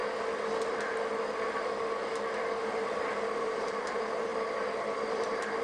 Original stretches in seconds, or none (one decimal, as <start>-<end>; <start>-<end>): 0.0-2.8; 4.3-5.6